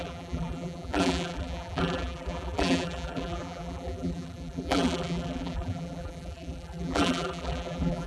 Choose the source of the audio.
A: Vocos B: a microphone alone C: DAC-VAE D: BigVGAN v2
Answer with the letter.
D